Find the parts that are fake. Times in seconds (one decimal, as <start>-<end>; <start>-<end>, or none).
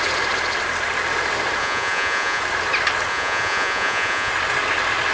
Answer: 1.6-2.4; 3.1-4.3